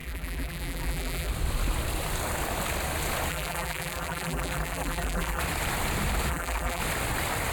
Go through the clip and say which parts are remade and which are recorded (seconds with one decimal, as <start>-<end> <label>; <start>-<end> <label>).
0.0-1.3 remade; 1.3-3.3 recorded; 3.3-5.4 remade; 5.4-6.3 recorded; 6.3-6.8 remade; 6.8-7.5 recorded